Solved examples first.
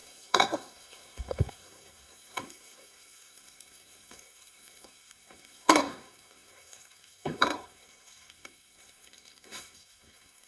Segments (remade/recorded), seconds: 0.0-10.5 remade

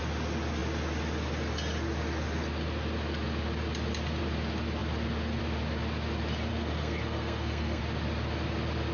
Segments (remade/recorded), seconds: 0.0-6.5 recorded; 6.5-7.8 remade; 7.8-8.9 recorded

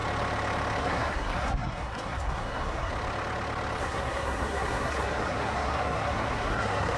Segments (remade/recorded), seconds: 0.0-0.8 recorded; 0.8-2.9 remade; 2.9-3.8 recorded; 3.8-7.0 remade